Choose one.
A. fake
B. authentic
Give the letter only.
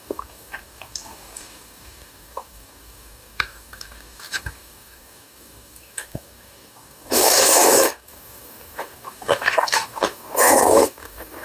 A